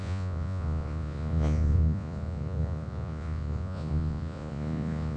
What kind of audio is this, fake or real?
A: fake